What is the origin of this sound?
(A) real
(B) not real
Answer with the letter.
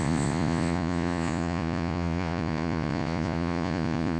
B